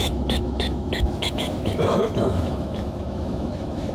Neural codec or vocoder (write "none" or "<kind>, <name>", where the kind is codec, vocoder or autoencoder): autoencoder, DAC-VAE